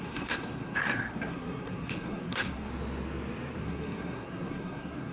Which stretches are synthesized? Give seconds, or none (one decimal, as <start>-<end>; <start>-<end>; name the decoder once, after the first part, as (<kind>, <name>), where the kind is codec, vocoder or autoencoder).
0.0-2.7 (codec, SNAC); 3.6-5.1